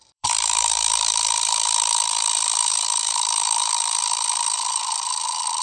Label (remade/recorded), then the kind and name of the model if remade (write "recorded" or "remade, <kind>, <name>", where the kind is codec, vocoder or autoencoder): remade, vocoder, BigVGAN v2